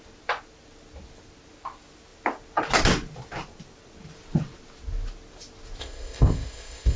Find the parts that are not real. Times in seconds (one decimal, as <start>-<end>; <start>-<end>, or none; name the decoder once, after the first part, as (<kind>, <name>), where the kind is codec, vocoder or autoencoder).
5.8-7.0 (codec, ZipCodec)

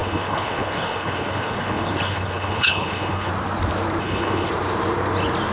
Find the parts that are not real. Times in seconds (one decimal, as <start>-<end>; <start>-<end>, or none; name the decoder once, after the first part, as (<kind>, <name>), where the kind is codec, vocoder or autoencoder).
0.0-3.3 (codec, HILCodec); 4.0-4.5

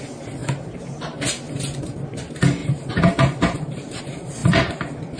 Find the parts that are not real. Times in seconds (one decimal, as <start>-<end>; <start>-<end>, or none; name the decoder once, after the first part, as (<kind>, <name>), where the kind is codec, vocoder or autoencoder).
0.4-1.3 (vocoder, BigVGAN v2); 2.6-4.0

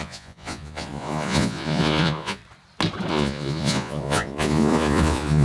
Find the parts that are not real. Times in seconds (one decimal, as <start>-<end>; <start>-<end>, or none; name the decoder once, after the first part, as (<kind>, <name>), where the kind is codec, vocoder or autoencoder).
0.0-2.4 (vocoder, Vocos); 3.1-5.4

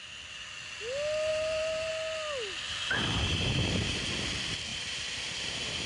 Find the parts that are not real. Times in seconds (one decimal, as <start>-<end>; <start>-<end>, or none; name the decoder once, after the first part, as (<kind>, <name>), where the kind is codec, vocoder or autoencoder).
1.3-1.9 (vocoder, BigVGAN v2); 2.7-3.9; 4.7-5.9

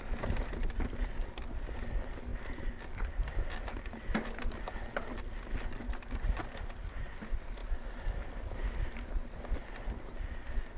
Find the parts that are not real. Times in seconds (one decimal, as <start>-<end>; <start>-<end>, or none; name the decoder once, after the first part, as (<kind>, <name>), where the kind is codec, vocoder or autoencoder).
none

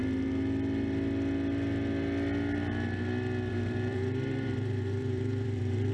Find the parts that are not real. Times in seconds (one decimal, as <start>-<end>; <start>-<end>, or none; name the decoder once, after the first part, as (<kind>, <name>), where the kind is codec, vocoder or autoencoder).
3.5-5.9 (vocoder, BigVGAN v2)

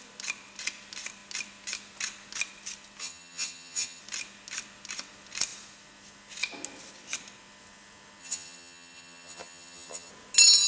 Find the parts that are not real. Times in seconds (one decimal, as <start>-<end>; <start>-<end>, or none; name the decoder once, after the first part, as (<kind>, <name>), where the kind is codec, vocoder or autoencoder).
3.0-4.0 (vocoder, HiFi-GAN); 8.2-10.1